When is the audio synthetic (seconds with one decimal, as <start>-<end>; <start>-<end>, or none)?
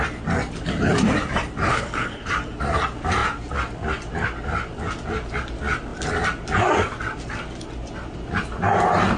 1.7-2.3